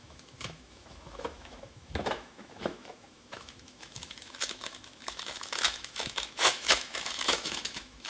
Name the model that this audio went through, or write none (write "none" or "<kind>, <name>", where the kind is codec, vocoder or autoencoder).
autoencoder, DAC-VAE